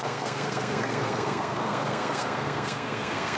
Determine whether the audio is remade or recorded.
remade